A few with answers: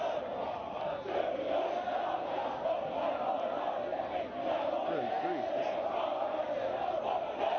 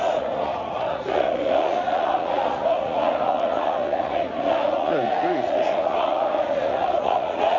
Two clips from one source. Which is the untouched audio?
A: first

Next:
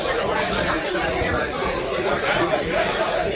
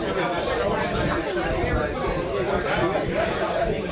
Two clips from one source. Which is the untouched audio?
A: second